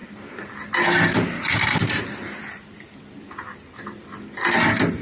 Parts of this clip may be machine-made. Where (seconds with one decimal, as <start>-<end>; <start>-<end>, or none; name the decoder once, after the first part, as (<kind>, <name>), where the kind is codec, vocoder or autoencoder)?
none